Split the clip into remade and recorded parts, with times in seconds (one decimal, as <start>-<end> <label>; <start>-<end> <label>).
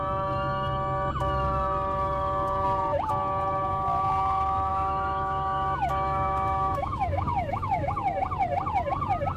0.0-4.7 recorded; 4.7-7.9 remade; 7.9-9.4 recorded